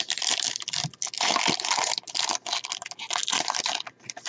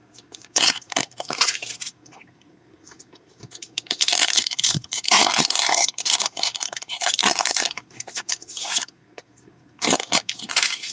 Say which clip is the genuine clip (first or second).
first